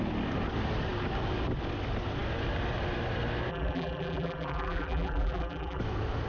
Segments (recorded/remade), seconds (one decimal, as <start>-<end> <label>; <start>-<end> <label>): 0.0-3.5 recorded; 3.5-5.8 remade; 5.8-6.3 recorded